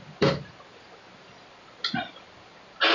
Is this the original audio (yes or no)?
yes